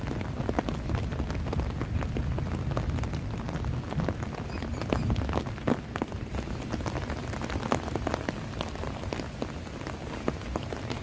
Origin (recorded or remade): recorded